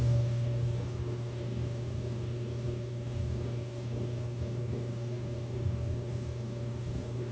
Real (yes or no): no